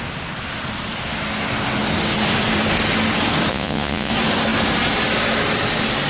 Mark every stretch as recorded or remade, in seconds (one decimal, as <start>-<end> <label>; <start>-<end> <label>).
0.0-3.5 recorded; 3.5-4.1 remade; 4.1-6.1 recorded